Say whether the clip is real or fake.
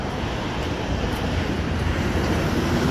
fake